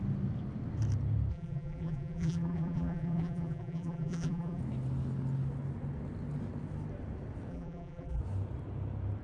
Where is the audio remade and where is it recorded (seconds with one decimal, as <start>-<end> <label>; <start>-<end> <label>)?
0.0-1.3 recorded; 1.3-4.6 remade; 4.6-7.5 recorded; 7.5-8.2 remade; 8.2-9.2 recorded